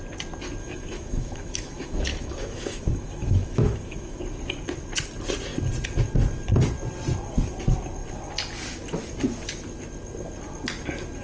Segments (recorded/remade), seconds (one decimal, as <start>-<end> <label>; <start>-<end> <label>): 0.0-0.6 recorded; 0.6-4.2 remade; 4.2-11.2 recorded

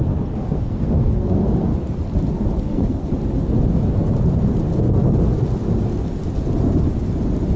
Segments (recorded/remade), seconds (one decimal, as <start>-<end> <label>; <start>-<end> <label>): 0.0-1.7 remade; 1.7-2.6 recorded; 2.6-3.1 remade; 3.1-7.6 recorded

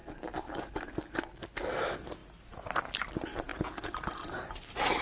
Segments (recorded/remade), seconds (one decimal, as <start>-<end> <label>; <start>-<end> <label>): 0.0-5.0 recorded

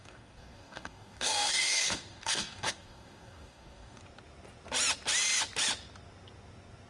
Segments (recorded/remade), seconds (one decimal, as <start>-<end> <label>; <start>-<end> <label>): 0.0-4.0 remade; 4.0-6.9 recorded